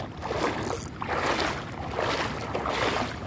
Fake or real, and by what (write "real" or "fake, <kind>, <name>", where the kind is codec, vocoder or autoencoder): real